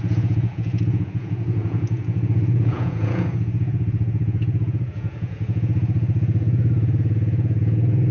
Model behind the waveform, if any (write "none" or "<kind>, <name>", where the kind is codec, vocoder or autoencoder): vocoder, Vocos